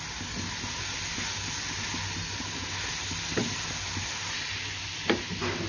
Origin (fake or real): real